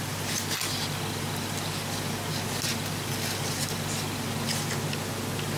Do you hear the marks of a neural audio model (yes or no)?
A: no